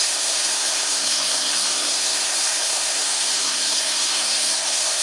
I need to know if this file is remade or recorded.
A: remade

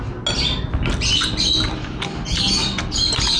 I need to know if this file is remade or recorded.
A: recorded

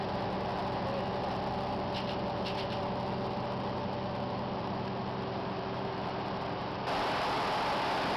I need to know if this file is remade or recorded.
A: recorded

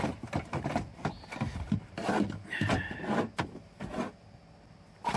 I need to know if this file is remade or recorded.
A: recorded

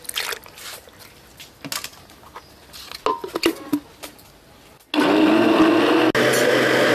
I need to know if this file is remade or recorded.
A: recorded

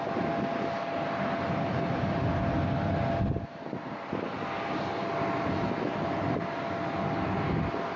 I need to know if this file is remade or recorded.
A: recorded